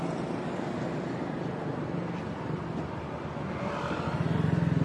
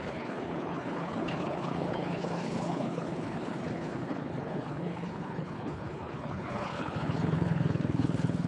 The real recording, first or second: first